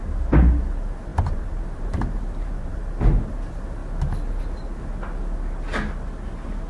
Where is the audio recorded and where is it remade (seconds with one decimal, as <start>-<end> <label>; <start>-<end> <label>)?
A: 0.0-1.1 recorded; 1.1-2.8 remade; 2.8-6.7 recorded